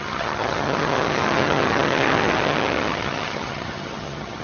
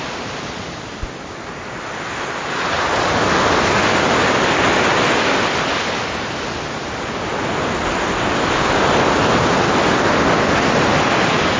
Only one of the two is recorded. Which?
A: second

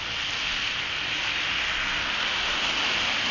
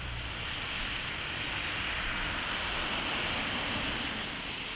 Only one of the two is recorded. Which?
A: first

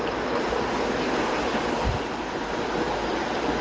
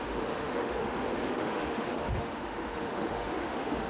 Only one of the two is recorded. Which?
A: first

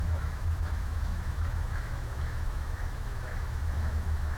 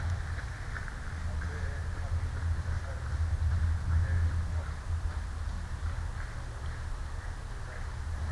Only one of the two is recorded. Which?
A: second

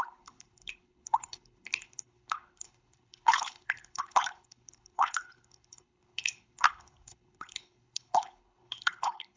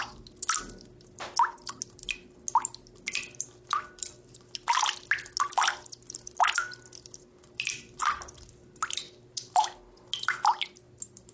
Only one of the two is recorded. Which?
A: second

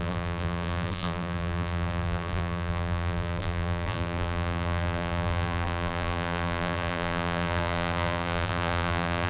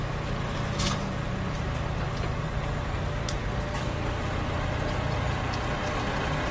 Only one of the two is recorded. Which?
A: second